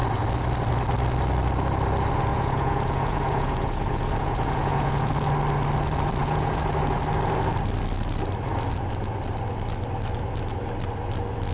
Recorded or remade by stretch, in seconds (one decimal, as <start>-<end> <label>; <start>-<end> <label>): 0.0-2.3 recorded; 2.3-5.1 remade; 5.1-6.2 recorded; 6.2-6.7 remade; 6.7-11.5 recorded